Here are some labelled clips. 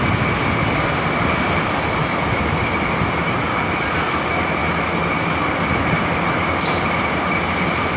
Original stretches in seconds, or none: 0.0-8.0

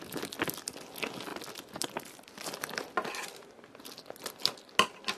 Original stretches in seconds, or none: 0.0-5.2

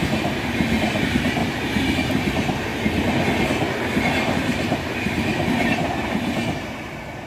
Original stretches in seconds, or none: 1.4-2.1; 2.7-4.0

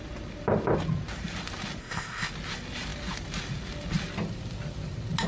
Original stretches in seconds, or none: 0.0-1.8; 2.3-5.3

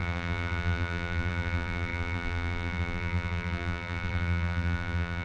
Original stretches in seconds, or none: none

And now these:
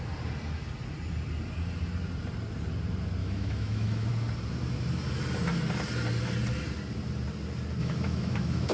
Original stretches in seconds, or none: 0.0-3.2; 4.1-7.8

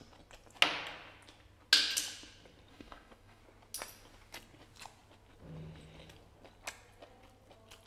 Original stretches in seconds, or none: 0.0-2.7; 3.4-7.9